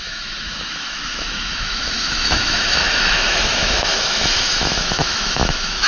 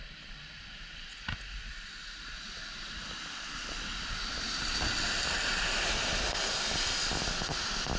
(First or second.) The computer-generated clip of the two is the first